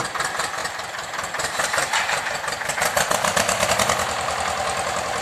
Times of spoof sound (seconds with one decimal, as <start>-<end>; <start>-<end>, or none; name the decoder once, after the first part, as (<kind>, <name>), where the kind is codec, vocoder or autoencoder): 0.6-3.7 (vocoder, BigVGAN v2)

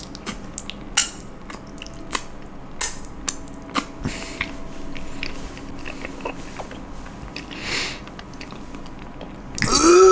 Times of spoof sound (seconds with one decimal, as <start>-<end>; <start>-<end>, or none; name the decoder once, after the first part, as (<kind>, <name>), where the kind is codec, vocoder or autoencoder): none

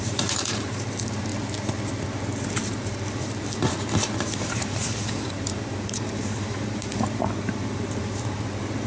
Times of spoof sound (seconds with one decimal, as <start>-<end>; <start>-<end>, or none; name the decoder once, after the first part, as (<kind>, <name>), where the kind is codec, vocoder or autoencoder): 0.0-1.3 (vocoder, BigVGAN v2); 2.4-8.9

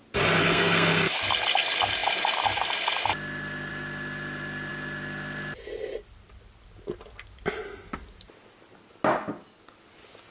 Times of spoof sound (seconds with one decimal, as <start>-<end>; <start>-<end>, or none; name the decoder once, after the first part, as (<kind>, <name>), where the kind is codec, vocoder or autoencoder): 0.4-1.2 (codec, SNAC)

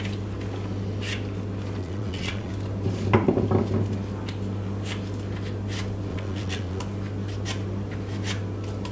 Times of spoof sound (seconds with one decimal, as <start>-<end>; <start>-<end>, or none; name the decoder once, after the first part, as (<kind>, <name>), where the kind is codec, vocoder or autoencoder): 1.8-2.5 (vocoder, Vocos); 6.1-6.8

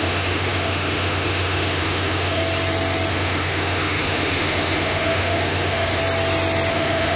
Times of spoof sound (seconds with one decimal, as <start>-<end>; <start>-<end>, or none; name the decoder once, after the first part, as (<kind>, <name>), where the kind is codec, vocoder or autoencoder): 0.0-2.4 (autoencoder, DAC-VAE); 3.1-6.0; 6.7-7.2

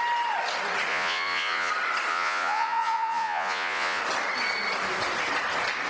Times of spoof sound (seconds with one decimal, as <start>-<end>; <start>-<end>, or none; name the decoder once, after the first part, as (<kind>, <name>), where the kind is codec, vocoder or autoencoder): 0.9-1.7 (vocoder, Vocos); 2.1-4.0